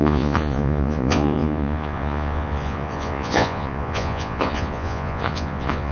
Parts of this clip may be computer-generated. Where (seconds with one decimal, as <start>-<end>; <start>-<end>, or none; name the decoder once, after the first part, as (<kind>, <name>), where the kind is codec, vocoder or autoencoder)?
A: 0.0-5.9 (vocoder, Vocos)